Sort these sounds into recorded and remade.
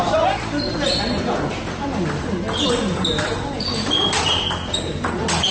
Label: recorded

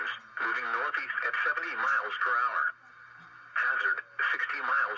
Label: recorded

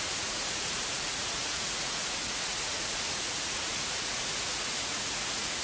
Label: remade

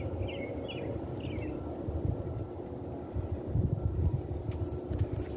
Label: recorded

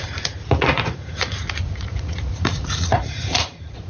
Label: remade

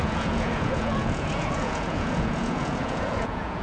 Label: remade